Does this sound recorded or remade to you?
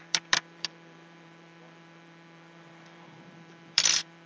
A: remade